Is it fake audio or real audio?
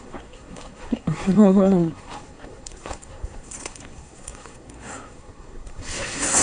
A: fake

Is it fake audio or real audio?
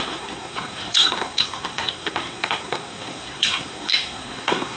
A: fake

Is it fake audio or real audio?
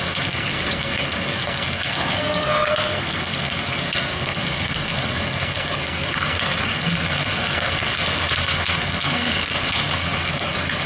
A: fake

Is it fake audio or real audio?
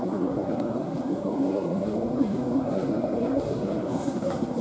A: fake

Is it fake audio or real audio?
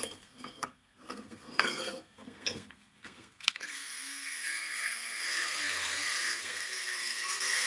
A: fake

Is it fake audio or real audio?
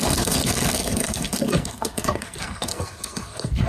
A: fake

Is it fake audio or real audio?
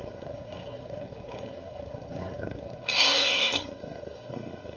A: fake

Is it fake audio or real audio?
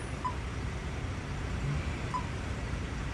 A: real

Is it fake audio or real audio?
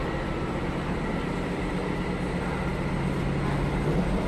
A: real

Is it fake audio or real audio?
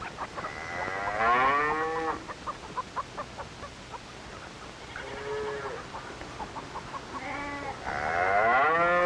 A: real